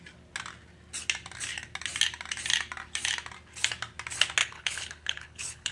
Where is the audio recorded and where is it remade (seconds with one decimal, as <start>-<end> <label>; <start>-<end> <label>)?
0.0-4.4 recorded; 4.4-5.7 remade